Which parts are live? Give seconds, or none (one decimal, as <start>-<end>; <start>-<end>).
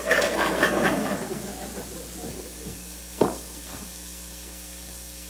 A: 1.5-2.3